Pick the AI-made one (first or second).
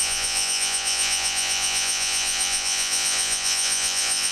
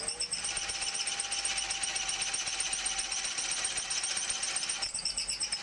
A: first